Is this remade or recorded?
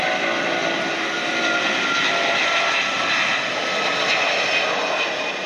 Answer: recorded